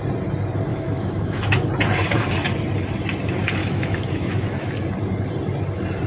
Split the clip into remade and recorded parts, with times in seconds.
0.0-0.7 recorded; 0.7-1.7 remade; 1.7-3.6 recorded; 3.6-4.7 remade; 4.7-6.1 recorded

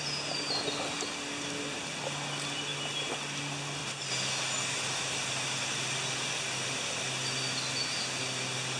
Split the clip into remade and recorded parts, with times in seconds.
0.0-8.8 recorded

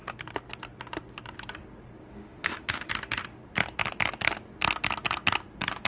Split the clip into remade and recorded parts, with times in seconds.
0.0-2.1 recorded; 2.1-2.9 remade; 2.9-5.9 recorded

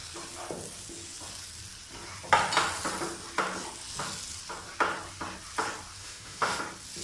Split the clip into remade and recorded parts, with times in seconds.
0.0-6.0 recorded; 6.0-6.6 remade; 6.6-7.0 recorded

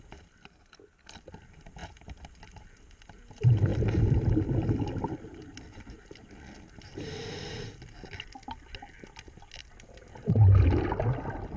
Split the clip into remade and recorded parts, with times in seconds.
0.0-11.6 recorded